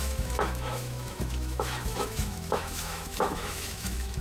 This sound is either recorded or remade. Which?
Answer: remade